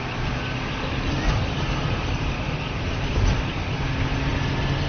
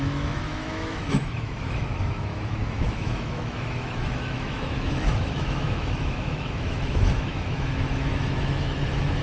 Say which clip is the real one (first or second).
first